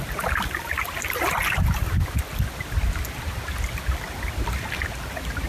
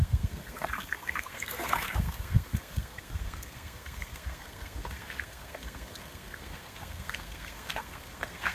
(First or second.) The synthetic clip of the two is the second